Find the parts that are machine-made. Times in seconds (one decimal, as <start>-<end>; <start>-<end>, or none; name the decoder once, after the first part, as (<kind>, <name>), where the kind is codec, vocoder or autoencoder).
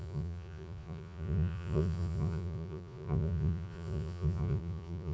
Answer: 0.0-5.1 (vocoder, Vocos)